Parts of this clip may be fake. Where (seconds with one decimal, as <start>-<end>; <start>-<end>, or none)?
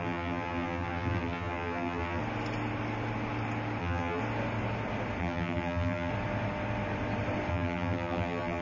0.0-2.2; 3.8-4.2; 5.2-6.1; 7.5-8.6